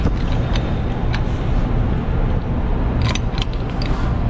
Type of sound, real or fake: real